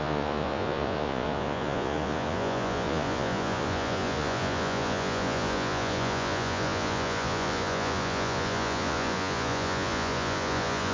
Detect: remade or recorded remade